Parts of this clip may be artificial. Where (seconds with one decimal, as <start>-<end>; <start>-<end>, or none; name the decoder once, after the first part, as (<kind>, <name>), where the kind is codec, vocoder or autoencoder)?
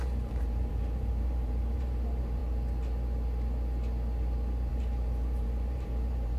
0.0-2.4 (vocoder, BigVGAN v2); 4.7-6.4